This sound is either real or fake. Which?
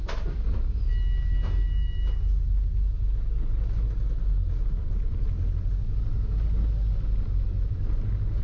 real